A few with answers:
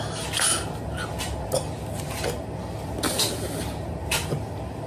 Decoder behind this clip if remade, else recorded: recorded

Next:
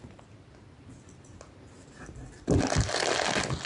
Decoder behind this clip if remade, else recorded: recorded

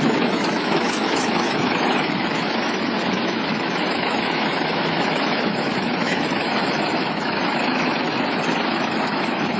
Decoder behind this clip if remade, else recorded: remade, autoencoder, DAC-VAE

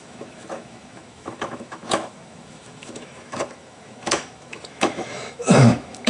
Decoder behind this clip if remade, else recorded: remade, autoencoder, DAC-VAE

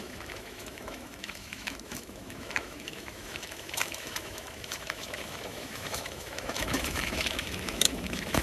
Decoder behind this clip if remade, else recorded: remade, autoencoder, DAC-VAE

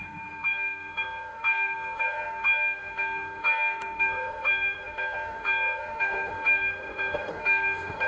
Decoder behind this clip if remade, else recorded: remade, autoencoder, DAC-VAE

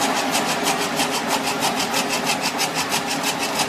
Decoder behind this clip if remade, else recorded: recorded